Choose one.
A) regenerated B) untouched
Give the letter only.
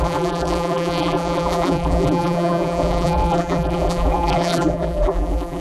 A